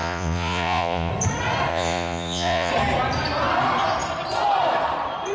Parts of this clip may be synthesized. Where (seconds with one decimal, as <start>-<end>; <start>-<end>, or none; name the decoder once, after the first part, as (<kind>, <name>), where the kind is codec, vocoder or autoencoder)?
0.0-1.1 (vocoder, Vocos); 1.7-2.7